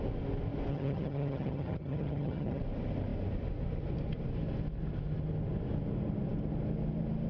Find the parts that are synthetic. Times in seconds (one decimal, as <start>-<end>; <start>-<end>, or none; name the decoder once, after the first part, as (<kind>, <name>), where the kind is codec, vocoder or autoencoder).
0.7-2.6 (vocoder, HiFi-GAN)